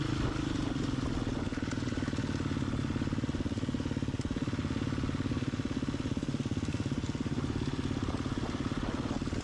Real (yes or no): yes